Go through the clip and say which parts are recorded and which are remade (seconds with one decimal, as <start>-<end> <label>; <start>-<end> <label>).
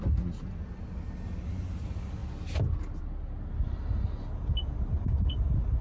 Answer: 0.0-5.8 recorded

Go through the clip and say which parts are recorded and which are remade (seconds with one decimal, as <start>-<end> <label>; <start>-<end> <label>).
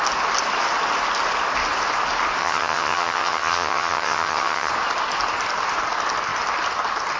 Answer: 0.0-2.4 recorded; 2.4-4.7 remade; 4.7-7.2 recorded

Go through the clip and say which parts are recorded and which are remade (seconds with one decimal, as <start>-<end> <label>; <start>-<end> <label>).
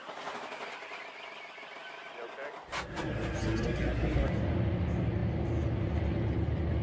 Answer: 0.0-6.8 recorded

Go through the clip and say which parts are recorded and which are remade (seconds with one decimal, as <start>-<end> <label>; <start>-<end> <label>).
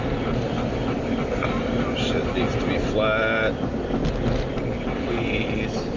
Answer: 0.0-6.0 recorded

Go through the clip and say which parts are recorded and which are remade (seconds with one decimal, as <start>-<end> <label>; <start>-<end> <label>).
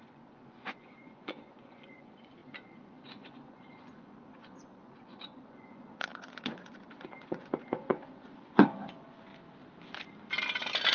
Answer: 0.0-9.3 remade; 9.3-10.9 recorded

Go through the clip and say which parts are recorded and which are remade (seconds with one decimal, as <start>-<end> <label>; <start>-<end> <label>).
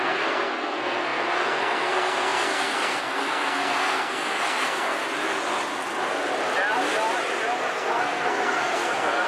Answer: 0.0-5.0 remade; 5.0-7.7 recorded; 7.7-9.3 remade